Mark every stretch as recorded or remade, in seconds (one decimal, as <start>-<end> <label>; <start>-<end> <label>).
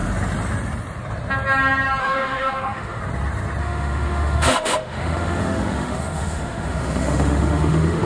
0.0-2.0 recorded; 2.0-3.0 remade; 3.0-3.6 recorded; 3.6-8.1 remade